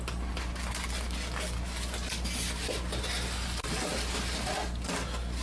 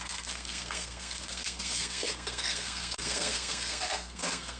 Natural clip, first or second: first